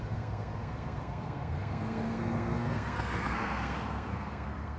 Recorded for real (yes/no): no